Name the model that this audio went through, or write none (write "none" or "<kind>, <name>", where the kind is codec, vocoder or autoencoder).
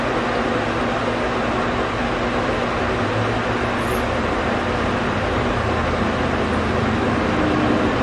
none